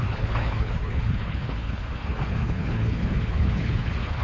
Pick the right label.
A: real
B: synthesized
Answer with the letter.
B